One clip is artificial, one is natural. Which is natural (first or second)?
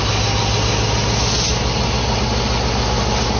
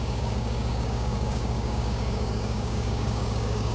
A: first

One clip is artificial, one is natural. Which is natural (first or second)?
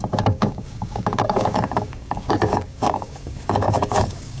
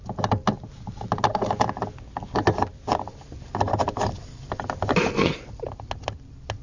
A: second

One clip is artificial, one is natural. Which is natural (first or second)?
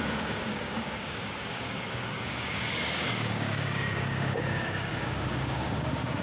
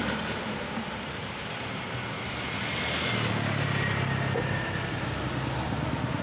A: second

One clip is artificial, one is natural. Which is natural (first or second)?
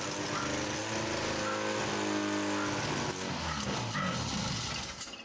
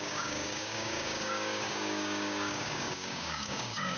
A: first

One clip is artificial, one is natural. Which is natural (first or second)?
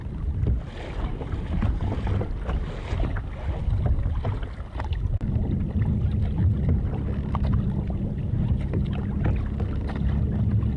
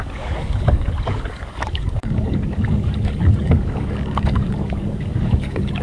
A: first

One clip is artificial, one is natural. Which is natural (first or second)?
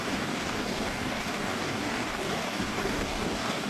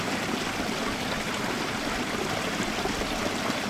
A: second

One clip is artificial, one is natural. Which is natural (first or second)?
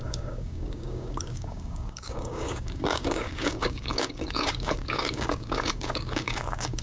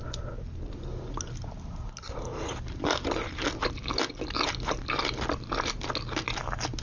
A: second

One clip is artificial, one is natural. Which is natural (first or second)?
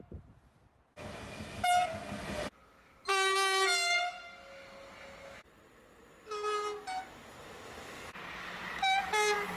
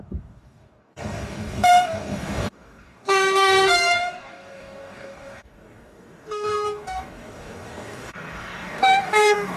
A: first